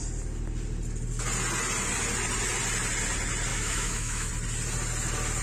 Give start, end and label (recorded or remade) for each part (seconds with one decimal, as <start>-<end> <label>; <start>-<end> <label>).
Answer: 0.0-3.5 recorded; 3.5-4.3 remade; 4.3-5.4 recorded